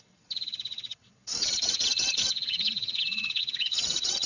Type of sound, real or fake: fake